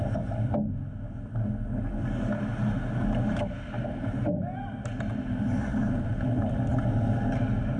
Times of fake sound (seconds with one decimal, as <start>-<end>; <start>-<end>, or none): none